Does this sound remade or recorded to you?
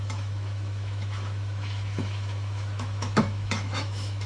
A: remade